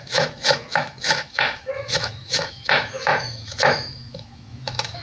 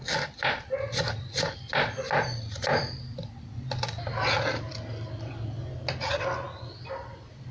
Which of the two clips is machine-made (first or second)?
first